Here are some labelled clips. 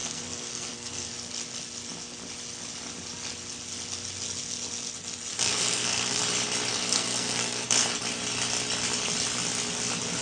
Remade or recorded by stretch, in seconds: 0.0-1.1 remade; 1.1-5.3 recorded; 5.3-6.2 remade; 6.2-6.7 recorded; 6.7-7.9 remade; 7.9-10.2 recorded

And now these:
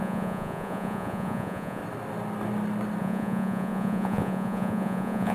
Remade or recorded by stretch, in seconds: 0.0-1.8 remade; 1.8-3.0 recorded; 3.0-5.3 remade

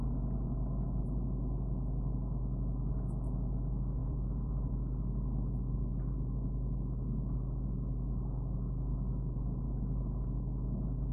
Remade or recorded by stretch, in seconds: 0.0-4.0 recorded; 4.0-5.0 remade; 5.0-11.1 recorded

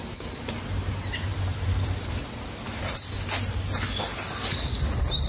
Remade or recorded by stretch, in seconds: 0.0-1.3 recorded; 1.3-3.1 remade; 3.1-5.3 recorded

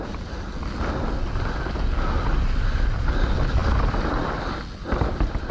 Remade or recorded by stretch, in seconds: 0.0-5.5 recorded

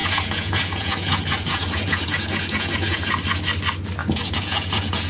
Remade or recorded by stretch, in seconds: 0.0-3.1 remade; 3.1-4.0 recorded; 4.0-5.1 remade

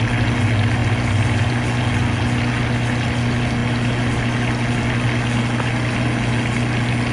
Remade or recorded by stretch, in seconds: 0.0-7.1 recorded